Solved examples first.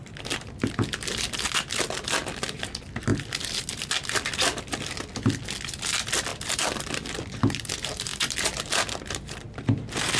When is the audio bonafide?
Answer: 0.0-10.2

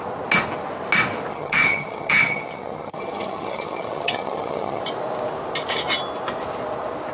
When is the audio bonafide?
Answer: 0.0-1.3; 4.8-7.1

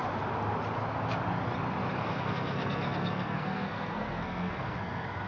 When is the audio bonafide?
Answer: 0.0-2.0